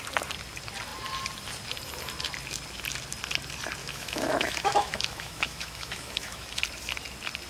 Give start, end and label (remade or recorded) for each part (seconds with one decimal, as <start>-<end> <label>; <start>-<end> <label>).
0.0-3.8 recorded; 3.8-6.6 remade; 6.6-7.5 recorded